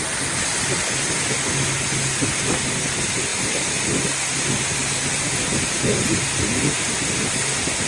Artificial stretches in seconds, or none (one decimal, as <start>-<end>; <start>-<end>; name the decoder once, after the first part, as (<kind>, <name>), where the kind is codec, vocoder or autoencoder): none